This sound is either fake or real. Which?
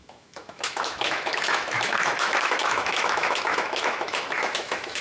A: fake